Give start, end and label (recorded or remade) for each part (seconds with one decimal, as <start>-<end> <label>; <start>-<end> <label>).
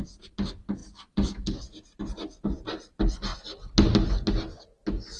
0.0-5.2 recorded